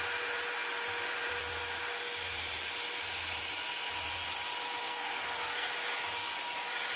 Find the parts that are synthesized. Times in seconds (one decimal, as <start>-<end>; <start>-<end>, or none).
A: 4.8-5.7